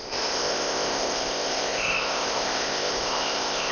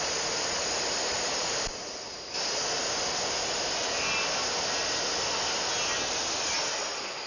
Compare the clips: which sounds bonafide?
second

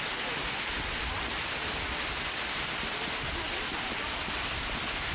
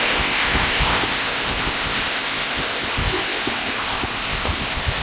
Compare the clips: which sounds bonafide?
first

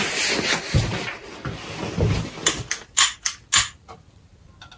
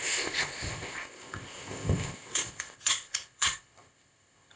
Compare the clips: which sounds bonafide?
first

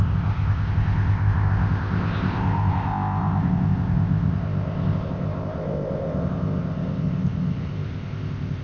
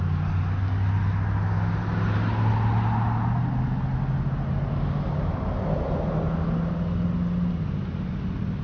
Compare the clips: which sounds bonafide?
second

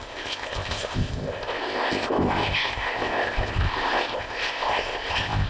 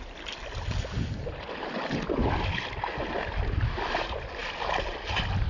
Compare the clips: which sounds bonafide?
second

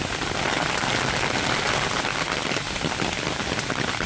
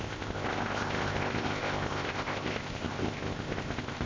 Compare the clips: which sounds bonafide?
first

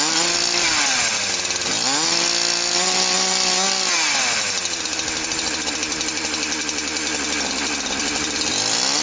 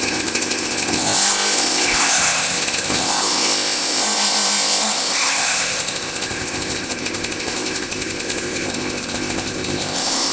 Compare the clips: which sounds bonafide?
first